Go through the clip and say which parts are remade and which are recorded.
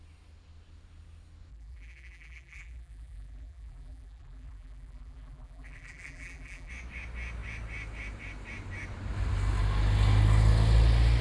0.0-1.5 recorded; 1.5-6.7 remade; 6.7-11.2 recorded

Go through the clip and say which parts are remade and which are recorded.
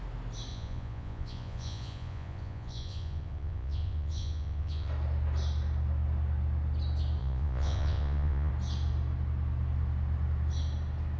0.0-0.5 recorded; 0.5-4.9 remade; 4.9-7.2 recorded; 7.2-8.5 remade; 8.5-11.2 recorded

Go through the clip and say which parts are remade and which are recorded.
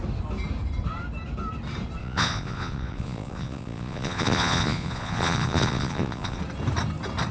0.0-2.0 recorded; 2.0-6.4 remade; 6.4-7.3 recorded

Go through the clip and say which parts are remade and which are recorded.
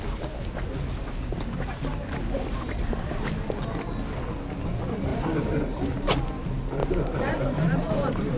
0.0-5.1 recorded; 5.1-5.8 remade; 5.8-6.8 recorded; 6.8-8.4 remade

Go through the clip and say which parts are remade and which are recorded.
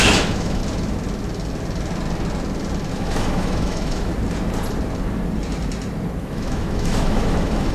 0.0-0.6 remade; 0.6-2.9 recorded; 2.9-4.1 remade; 4.1-6.2 recorded; 6.2-7.7 remade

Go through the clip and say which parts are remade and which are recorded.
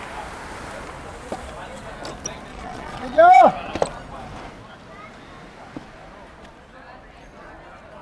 0.0-2.5 recorded; 2.5-3.4 remade; 3.4-8.0 recorded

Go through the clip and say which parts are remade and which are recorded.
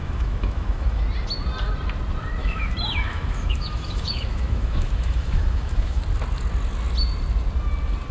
0.0-1.0 remade; 1.0-2.4 recorded; 2.4-6.0 remade; 6.0-8.1 recorded